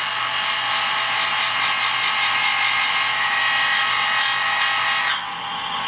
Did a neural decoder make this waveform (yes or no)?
no